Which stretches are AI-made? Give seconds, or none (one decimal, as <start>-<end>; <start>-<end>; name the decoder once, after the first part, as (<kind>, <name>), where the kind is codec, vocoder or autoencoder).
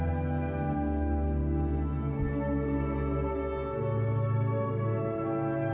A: none